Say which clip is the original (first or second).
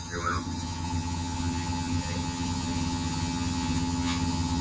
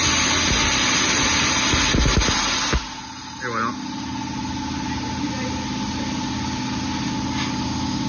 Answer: second